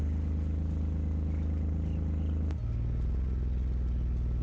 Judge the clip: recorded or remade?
recorded